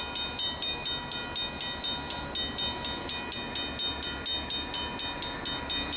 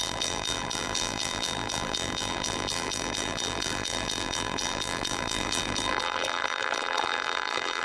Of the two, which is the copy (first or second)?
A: second